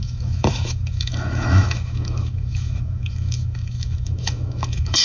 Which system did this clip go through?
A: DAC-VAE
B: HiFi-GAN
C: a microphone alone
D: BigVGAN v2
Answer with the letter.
A